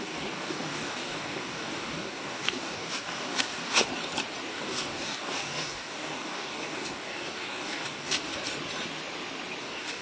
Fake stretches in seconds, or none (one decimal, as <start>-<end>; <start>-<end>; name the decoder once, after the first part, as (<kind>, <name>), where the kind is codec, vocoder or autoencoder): 0.0-3.9 (codec, DAC); 4.5-8.3; 9.6-10.0